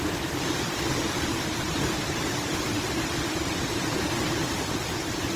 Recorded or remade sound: recorded